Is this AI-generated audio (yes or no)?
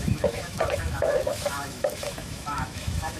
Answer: yes